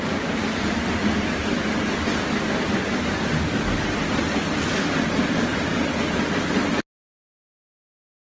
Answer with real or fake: real